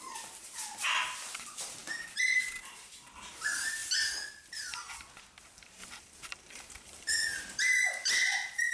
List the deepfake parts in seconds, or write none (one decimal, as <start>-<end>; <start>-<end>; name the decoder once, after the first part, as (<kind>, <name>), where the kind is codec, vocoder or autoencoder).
0.0-3.8 (vocoder, BigVGAN v2); 4.5-8.7